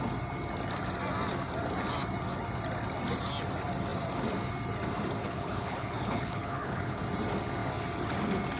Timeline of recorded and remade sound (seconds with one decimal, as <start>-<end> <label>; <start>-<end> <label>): 0.0-5.2 recorded; 5.2-7.0 remade; 7.0-8.6 recorded